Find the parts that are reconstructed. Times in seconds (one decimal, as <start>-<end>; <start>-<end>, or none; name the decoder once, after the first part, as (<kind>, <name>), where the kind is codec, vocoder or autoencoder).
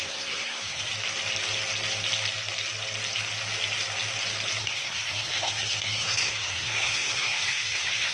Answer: 0.0-0.9 (codec, SNAC); 4.6-8.1